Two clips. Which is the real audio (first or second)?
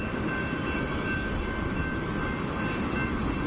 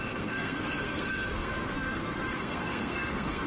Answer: first